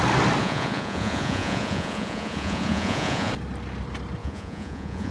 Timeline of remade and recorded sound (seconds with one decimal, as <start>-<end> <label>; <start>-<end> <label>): 0.0-0.4 recorded; 0.4-3.3 remade; 3.3-4.2 recorded; 4.2-5.1 remade